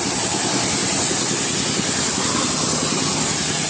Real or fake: real